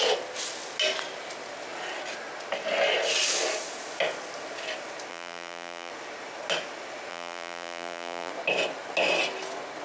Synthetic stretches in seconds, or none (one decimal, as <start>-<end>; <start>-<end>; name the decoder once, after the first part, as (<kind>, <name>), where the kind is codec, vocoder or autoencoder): 5.1-5.9 (vocoder, BigVGAN v2); 7.1-8.3

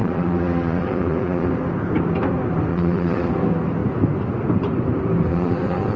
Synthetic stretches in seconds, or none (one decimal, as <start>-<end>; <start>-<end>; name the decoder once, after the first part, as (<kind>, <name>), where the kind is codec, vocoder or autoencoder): 0.0-1.5 (vocoder, Vocos); 2.7-3.3; 5.3-6.0

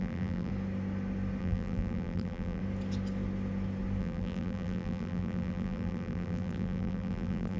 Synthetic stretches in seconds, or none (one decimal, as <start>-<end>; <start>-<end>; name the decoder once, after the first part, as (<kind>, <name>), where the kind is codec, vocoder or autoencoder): 0.0-0.5 (vocoder, BigVGAN v2); 1.4-2.6; 4.0-7.6

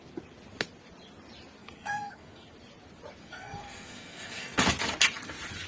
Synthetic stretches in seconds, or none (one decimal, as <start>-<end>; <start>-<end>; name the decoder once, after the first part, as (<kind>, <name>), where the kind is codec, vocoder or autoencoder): 1.6-2.5 (codec, SNAC); 3.2-4.6